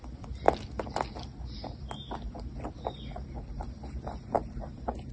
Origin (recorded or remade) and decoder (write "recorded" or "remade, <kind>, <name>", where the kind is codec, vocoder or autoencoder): recorded